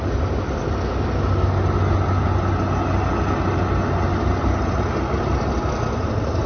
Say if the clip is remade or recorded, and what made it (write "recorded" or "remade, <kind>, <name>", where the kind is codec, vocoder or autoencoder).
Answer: recorded